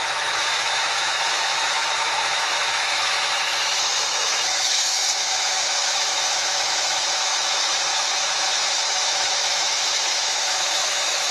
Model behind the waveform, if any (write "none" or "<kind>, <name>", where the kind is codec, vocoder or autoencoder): autoencoder, DAC-VAE